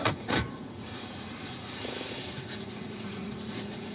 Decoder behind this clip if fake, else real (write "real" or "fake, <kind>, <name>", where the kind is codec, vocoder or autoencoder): fake, vocoder, Vocos